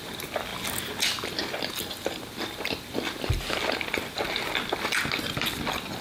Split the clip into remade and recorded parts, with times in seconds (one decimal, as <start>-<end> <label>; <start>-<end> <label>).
0.0-6.0 recorded